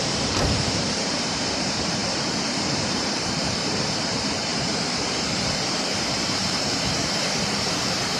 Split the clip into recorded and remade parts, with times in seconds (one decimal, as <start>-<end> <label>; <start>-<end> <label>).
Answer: 0.0-8.2 remade